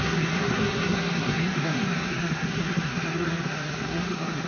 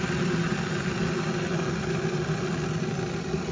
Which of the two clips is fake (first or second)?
first